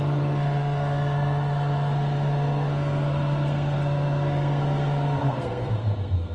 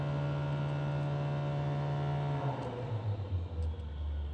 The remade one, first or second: first